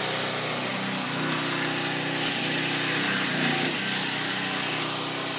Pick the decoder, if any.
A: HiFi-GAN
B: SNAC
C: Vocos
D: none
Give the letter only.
D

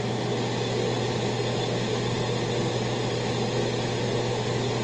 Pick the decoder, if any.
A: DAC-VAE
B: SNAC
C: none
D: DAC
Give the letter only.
C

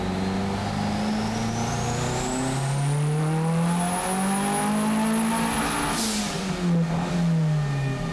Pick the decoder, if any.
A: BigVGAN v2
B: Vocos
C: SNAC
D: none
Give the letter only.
D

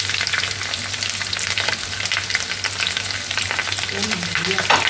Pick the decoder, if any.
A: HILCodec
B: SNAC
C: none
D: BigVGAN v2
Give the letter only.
C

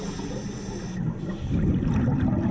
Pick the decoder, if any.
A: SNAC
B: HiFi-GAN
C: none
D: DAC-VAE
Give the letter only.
C